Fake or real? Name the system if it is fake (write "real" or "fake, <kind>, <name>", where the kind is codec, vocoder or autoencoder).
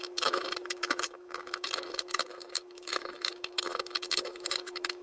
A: fake, autoencoder, DAC-VAE